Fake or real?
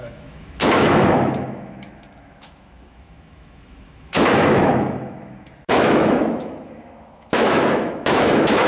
fake